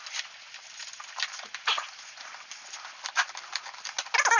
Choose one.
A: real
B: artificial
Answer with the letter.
A